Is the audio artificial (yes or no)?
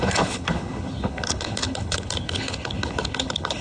yes